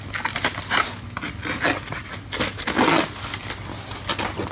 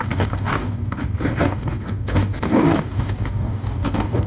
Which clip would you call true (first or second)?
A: first